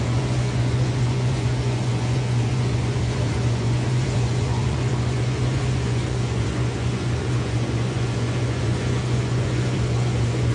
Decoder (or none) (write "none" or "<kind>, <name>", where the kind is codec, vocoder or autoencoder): vocoder, Vocos